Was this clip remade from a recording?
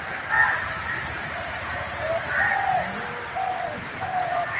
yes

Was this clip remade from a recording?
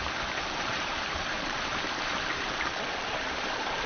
yes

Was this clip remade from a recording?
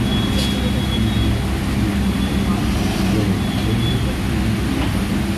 no